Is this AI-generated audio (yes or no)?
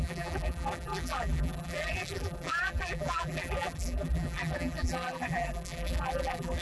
yes